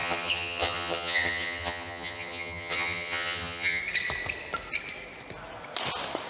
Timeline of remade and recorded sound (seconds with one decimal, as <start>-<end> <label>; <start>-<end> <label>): 0.0-3.8 remade; 3.8-6.3 recorded